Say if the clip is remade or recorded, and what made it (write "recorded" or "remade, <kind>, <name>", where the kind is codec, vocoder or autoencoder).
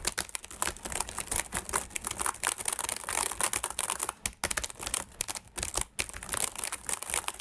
recorded